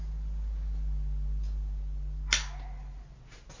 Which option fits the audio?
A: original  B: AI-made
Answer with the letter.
A